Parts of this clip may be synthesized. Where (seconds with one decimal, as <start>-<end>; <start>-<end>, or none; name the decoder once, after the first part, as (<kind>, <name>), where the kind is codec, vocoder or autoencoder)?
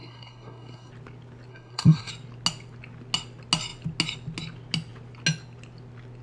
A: 0.0-0.9 (codec, SNAC); 1.5-2.1